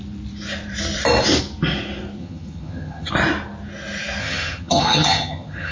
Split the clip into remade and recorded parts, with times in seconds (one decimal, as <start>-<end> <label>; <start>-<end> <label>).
0.0-2.2 recorded; 2.2-3.1 remade; 3.1-4.2 recorded; 4.2-5.7 remade